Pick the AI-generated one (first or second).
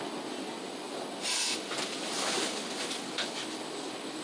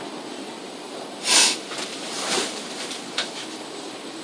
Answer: second